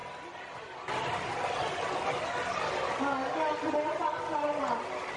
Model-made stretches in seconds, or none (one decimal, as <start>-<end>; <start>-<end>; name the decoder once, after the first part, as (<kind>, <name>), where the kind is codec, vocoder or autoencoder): none